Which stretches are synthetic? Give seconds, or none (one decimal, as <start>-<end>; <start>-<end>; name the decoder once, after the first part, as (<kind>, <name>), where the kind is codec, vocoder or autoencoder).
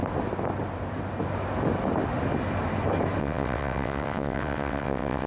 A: 3.2-5.3 (vocoder, WaveNeXt)